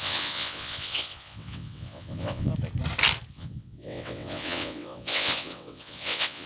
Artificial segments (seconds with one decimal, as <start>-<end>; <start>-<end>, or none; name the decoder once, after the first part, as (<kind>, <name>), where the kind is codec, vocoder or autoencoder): 0.0-2.5 (vocoder, WaveNeXt); 3.3-6.5

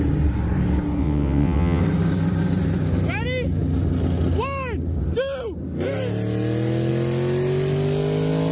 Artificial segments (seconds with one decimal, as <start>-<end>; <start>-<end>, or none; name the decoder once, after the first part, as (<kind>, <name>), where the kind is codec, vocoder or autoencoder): 1.0-1.8 (vocoder, WaveNeXt)

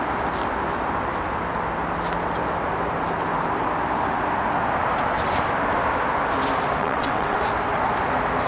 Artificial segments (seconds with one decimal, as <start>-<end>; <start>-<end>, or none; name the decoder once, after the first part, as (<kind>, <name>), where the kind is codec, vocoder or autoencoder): 6.8-7.5 (vocoder, WaveNeXt)